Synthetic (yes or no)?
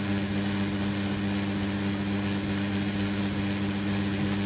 no